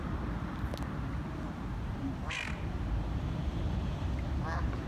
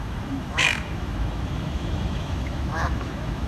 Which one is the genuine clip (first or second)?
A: first